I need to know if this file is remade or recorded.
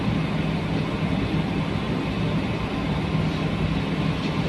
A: recorded